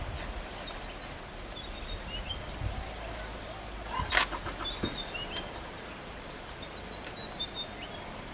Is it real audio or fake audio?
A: real